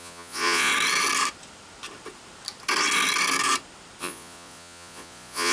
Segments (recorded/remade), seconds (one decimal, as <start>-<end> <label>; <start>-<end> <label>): 0.0-0.7 remade; 0.7-4.0 recorded; 4.0-5.5 remade